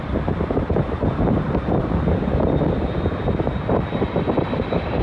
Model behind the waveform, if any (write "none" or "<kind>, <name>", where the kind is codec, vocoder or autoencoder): none